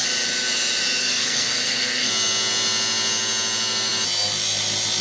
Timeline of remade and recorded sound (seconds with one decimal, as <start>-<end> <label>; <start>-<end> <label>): 0.0-1.0 recorded; 1.0-2.1 remade; 2.1-5.0 recorded